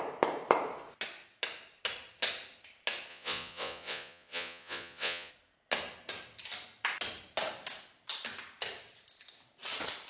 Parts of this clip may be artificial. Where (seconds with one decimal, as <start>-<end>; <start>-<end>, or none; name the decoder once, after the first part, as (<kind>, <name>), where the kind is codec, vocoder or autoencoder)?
3.1-5.3 (vocoder, Vocos)